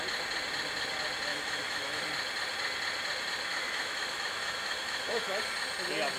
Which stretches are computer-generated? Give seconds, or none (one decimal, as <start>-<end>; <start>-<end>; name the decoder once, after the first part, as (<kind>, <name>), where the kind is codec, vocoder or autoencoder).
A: 1.3-2.0 (autoencoder, DAC-VAE); 3.5-5.4